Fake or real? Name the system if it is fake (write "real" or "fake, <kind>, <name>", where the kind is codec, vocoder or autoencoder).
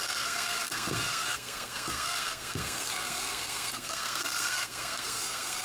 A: fake, codec, SNAC